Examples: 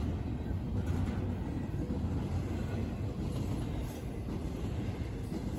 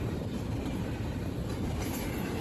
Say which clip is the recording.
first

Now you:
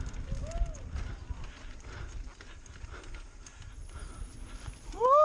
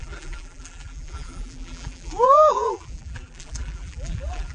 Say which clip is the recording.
first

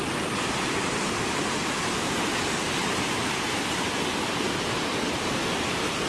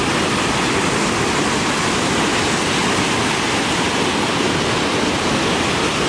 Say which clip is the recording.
second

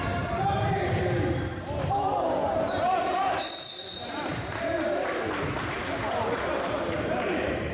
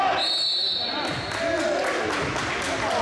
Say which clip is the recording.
second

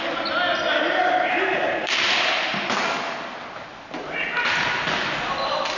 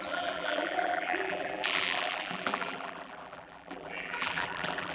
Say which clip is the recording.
first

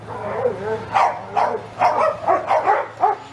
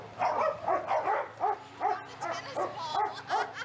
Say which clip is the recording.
first